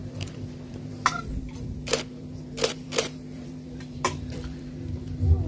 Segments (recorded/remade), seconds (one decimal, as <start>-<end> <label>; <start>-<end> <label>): 0.0-5.5 remade